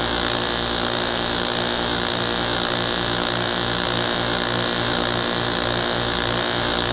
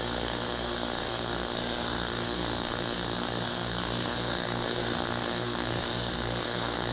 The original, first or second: first